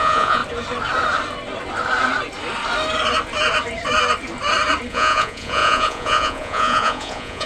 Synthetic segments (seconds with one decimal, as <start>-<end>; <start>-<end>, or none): 0.0-0.4; 4.9-7.5